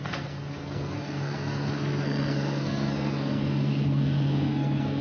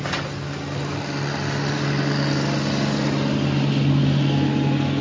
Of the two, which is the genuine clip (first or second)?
second